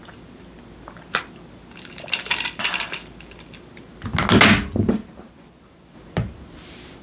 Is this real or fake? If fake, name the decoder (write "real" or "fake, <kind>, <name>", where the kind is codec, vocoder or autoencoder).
real